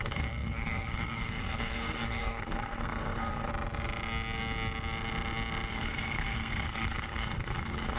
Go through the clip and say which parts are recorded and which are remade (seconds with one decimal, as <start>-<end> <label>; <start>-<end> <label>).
0.0-3.5 remade; 3.5-5.7 recorded; 5.7-8.0 remade